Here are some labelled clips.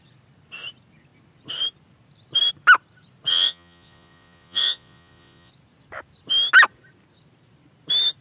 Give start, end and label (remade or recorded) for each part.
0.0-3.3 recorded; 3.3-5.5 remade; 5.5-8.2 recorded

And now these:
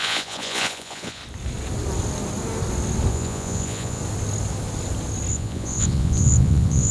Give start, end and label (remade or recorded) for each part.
0.0-1.2 remade; 1.2-3.1 recorded; 3.1-4.0 remade; 4.0-5.3 recorded; 5.3-6.9 remade

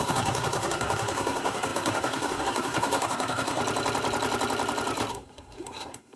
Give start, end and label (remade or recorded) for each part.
0.0-3.6 remade; 3.6-5.1 recorded; 5.1-6.2 remade

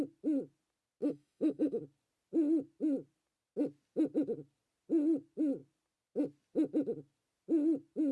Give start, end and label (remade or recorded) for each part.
0.0-1.0 recorded; 1.0-1.8 remade; 1.8-8.1 recorded

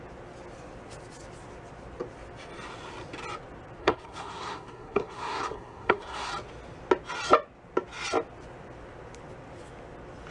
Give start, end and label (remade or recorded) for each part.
0.0-3.8 recorded; 3.8-6.3 remade; 6.3-10.3 recorded

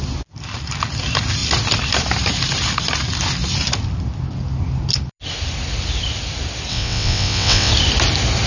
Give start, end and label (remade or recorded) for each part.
0.0-6.7 recorded; 6.7-7.7 remade; 7.7-8.5 recorded

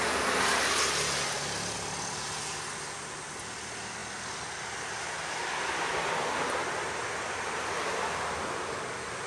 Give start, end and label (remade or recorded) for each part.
0.0-9.3 recorded

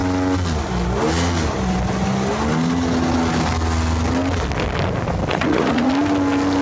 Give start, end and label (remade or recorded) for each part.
0.0-5.3 recorded; 5.3-5.9 remade; 5.9-6.6 recorded